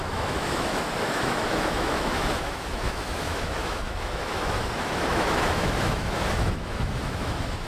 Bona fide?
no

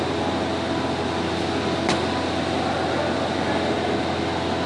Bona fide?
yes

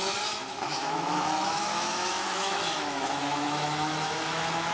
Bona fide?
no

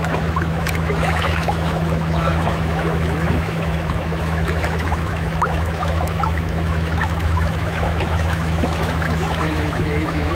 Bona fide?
no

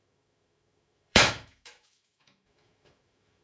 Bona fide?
no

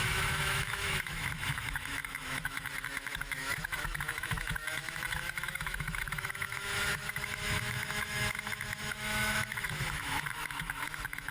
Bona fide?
no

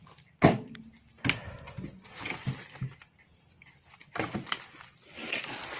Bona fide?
yes